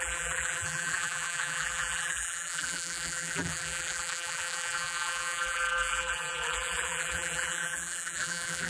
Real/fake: fake